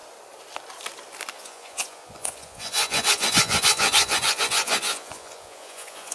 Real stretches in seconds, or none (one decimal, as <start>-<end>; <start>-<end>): 0.0-1.3